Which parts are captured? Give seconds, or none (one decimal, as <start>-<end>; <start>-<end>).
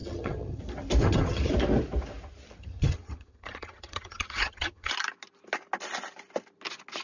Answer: 0.6-1.0; 1.5-2.6; 4.9-7.0